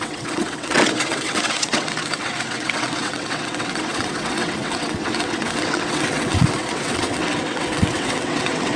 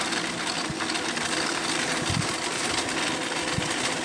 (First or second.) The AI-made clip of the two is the first